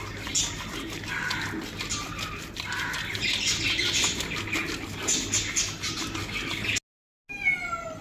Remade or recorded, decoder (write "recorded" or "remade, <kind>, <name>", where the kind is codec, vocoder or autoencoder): recorded